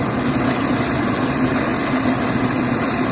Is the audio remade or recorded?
recorded